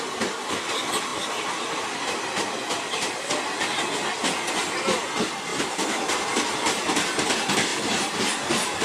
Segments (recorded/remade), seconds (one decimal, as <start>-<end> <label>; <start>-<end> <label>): 0.0-1.1 recorded; 1.1-3.3 remade; 3.3-5.5 recorded; 5.5-6.2 remade; 6.2-7.7 recorded; 7.7-8.2 remade; 8.2-8.8 recorded